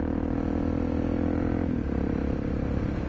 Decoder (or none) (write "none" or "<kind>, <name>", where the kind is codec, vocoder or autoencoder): none